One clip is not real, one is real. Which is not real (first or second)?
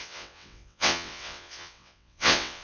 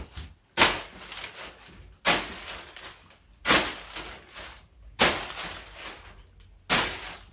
first